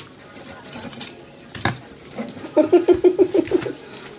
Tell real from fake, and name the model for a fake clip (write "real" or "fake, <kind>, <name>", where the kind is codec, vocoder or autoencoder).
real